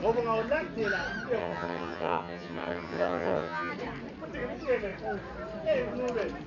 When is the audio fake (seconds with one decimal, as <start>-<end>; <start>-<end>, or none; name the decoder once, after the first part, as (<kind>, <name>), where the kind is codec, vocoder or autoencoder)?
1.4-3.7 (vocoder, HiFi-GAN)